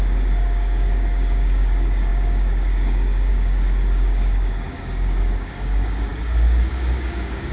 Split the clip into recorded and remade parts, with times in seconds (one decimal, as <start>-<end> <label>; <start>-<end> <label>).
0.0-7.5 remade